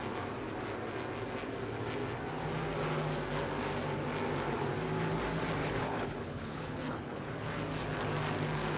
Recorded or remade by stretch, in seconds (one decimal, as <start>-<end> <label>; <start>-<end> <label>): 0.0-5.6 recorded; 5.6-7.3 remade; 7.3-8.8 recorded